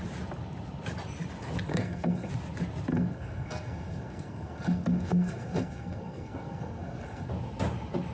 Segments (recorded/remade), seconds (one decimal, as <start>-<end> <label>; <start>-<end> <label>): 0.0-1.7 recorded; 1.7-2.3 remade; 2.3-2.9 recorded; 2.9-7.3 remade; 7.3-8.1 recorded

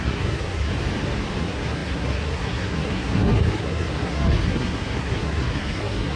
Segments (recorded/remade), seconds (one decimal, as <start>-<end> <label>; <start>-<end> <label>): 0.0-0.7 remade; 0.7-1.4 recorded; 1.4-6.2 remade